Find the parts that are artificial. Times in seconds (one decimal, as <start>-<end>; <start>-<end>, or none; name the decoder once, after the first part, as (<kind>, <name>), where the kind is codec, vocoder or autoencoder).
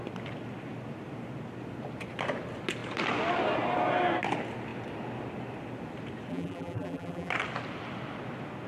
6.3-7.3 (vocoder, BigVGAN v2)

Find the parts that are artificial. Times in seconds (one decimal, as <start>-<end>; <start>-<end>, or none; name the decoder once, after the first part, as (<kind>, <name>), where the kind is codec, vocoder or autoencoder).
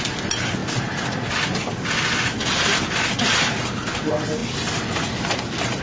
none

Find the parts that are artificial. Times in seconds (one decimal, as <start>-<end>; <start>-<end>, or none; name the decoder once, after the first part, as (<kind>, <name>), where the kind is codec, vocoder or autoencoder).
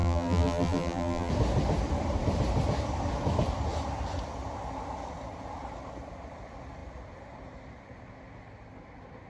0.0-1.3 (vocoder, BigVGAN v2)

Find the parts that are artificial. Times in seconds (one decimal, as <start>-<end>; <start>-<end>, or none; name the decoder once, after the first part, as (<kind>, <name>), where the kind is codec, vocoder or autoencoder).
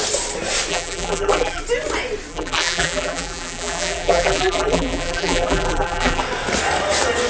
0.7-1.6 (vocoder, BigVGAN v2); 2.3-6.2